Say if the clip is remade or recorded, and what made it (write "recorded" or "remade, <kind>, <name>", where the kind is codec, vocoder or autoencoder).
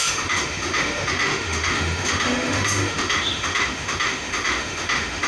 remade, autoencoder, DAC-VAE